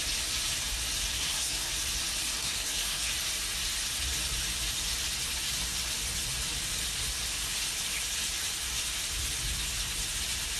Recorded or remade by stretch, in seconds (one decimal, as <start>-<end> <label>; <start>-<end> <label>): 0.0-1.1 recorded; 1.1-1.7 remade; 1.7-2.4 recorded; 2.4-3.1 remade; 3.1-10.6 recorded